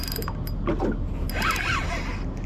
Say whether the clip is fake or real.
real